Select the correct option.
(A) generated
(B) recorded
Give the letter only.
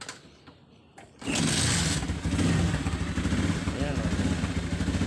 B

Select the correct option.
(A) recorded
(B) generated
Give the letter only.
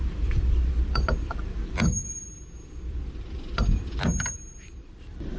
B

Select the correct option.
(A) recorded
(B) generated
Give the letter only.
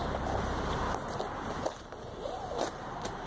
A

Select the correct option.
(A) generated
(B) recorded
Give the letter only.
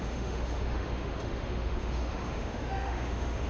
A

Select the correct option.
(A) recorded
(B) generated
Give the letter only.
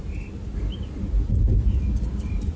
A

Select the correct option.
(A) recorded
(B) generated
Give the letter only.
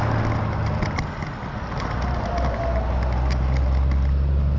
A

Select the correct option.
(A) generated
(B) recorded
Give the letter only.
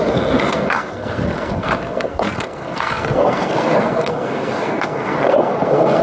A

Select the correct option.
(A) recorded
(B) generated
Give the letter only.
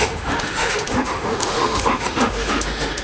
B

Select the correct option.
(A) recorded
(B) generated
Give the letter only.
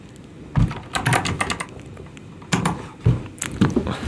A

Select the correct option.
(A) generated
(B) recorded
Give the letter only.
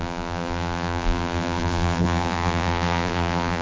A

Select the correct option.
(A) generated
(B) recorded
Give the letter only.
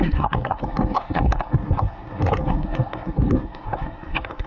A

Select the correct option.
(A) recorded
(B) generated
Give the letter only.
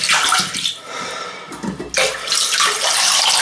A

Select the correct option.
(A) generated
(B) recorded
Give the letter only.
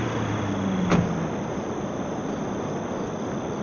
B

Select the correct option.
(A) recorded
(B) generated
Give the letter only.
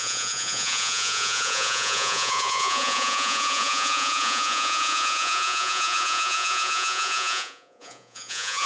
B